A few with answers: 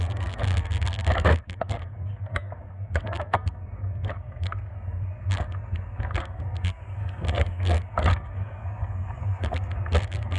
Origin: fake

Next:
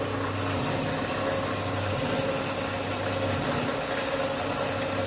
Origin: real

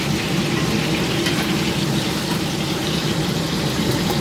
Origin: real